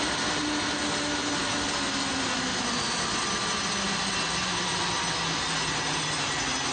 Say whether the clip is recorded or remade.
recorded